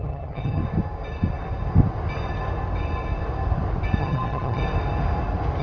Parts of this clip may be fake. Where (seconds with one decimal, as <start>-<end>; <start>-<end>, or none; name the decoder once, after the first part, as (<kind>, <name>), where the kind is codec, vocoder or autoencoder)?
0.0-0.6 (vocoder, HiFi-GAN); 4.0-4.6